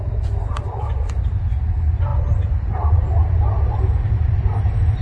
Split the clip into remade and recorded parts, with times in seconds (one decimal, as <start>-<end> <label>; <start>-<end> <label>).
0.0-2.1 recorded; 2.1-4.4 remade; 4.4-5.0 recorded